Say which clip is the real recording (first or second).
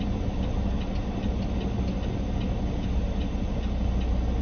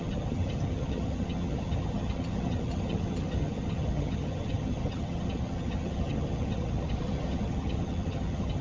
first